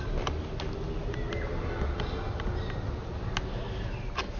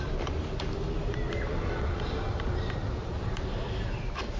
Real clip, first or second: first